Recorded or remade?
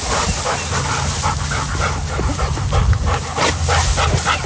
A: recorded